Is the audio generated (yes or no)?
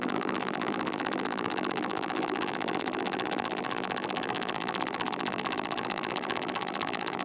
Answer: yes